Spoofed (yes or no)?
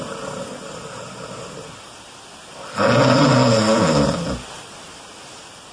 no